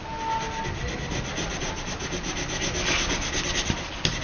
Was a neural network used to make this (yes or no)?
no